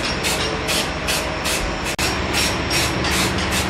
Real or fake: real